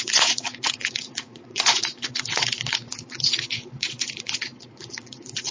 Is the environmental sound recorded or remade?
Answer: remade